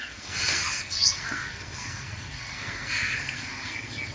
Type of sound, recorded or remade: remade